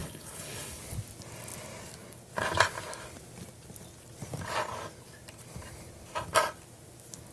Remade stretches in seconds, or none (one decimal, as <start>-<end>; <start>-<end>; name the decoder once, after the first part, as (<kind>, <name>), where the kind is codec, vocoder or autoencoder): 0.0-0.8 (codec, HILCodec)